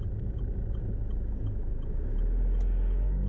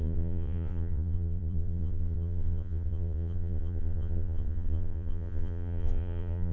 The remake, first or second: second